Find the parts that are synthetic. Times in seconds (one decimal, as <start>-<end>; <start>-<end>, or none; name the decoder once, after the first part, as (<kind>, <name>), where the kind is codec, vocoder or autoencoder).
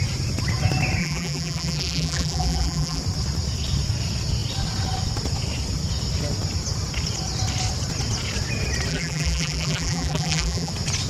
1.0-3.0 (vocoder, BigVGAN v2); 8.9-10.7